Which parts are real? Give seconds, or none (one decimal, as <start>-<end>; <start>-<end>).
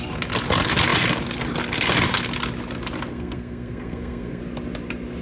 0.0-3.1; 4.4-5.2